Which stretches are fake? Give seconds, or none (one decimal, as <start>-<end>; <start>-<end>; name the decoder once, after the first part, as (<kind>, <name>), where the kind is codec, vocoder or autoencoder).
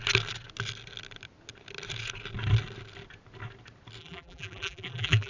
4.0-5.3 (vocoder, BigVGAN v2)